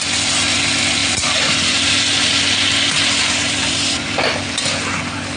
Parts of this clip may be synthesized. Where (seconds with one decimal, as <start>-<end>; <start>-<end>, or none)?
1.0-4.2